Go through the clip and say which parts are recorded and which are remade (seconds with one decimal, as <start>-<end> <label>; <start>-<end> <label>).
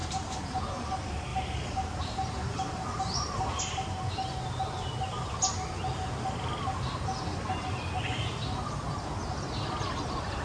0.0-0.6 remade; 0.6-1.3 recorded; 1.3-3.6 remade; 3.6-10.4 recorded